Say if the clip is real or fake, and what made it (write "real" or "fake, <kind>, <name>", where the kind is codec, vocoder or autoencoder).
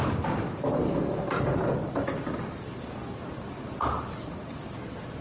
real